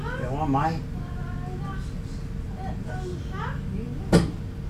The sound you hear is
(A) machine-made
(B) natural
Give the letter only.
B